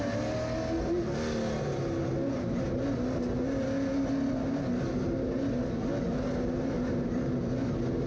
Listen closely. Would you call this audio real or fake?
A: real